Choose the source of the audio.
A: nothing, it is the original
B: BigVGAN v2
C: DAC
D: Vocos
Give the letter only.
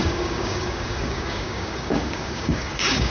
C